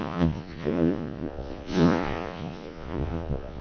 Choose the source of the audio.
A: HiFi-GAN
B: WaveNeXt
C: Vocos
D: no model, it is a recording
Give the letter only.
C